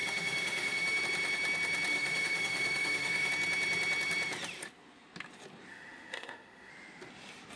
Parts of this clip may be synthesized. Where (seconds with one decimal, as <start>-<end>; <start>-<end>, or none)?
0.0-1.0; 1.9-3.3; 5.7-6.7